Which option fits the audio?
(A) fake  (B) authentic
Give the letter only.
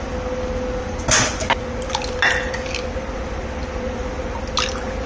B